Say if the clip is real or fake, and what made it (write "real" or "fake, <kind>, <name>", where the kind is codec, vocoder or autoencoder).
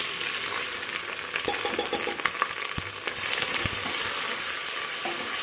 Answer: real